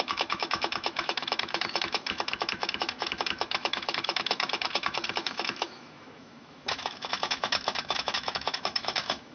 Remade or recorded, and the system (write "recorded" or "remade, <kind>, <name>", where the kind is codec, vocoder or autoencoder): remade, autoencoder, DAC-VAE